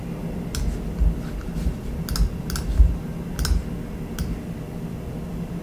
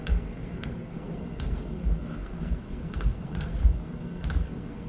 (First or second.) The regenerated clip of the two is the second